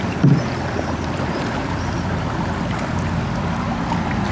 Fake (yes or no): yes